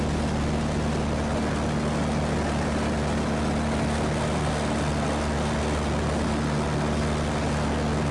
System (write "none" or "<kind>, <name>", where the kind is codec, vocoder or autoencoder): none